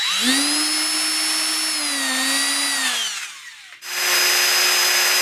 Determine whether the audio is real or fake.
real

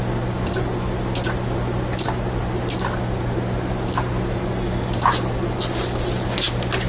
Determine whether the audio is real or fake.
real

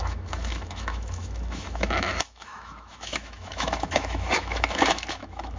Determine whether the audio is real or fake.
fake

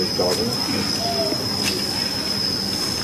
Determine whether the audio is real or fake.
real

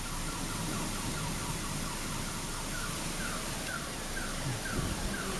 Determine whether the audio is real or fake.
real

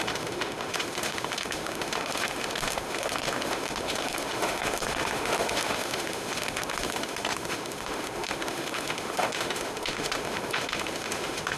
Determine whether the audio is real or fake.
fake